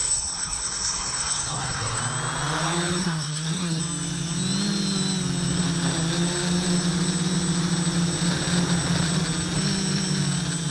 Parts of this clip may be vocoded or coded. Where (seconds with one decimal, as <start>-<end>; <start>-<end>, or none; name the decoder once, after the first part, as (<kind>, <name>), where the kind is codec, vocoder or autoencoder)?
0.0-2.0 (codec, SNAC); 3.0-3.8